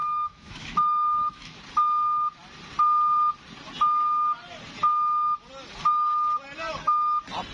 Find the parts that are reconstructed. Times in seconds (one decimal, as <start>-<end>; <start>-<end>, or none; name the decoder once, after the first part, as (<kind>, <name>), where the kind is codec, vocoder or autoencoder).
0.0-1.6 (autoencoder, DAC-VAE)